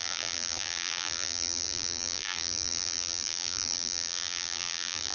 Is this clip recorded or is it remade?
remade